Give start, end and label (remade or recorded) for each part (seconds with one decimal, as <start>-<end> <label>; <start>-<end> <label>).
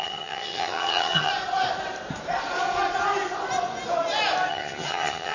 0.0-1.3 remade; 1.3-4.5 recorded; 4.5-5.3 remade